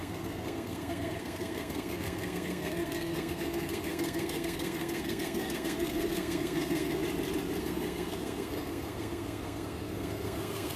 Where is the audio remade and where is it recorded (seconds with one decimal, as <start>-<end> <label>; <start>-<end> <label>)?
0.0-7.0 remade; 7.0-7.6 recorded; 7.6-10.8 remade